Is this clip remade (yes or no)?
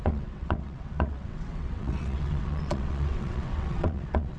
yes